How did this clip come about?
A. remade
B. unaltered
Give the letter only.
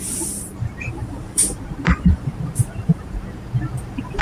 A